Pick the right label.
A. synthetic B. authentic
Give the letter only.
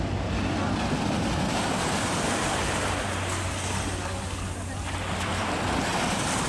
B